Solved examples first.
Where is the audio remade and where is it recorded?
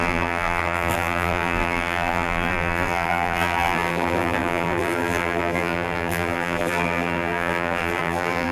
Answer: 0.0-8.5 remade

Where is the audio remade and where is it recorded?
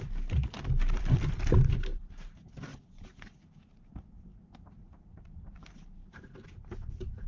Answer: 0.0-7.3 remade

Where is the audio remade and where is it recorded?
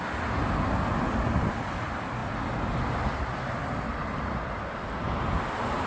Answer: 0.0-5.9 recorded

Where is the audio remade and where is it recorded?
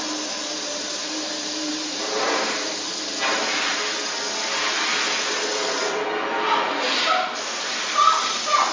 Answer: 0.0-1.0 recorded; 1.0-2.7 remade; 2.7-8.7 recorded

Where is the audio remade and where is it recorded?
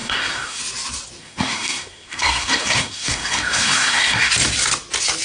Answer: 0.0-0.6 remade; 0.6-1.2 recorded; 1.2-4.3 remade; 4.3-5.2 recorded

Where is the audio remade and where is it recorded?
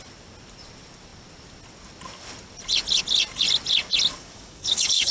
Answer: 0.0-4.1 recorded; 4.1-5.1 remade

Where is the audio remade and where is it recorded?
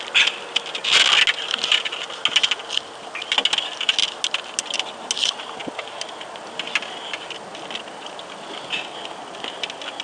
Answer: 0.0-10.0 recorded